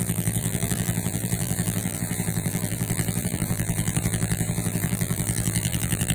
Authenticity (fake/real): fake